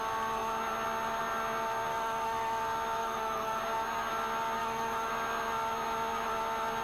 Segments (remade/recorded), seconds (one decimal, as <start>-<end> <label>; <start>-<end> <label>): 0.0-1.9 recorded; 1.9-2.6 remade; 2.6-3.0 recorded; 3.0-3.6 remade; 3.6-4.6 recorded; 4.6-5.1 remade; 5.1-6.8 recorded